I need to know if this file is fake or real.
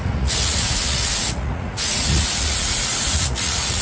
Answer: fake